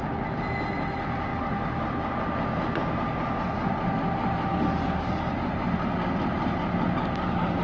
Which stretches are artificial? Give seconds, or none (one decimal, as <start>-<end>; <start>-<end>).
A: 4.5-5.3